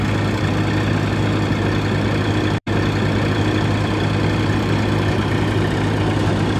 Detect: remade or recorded recorded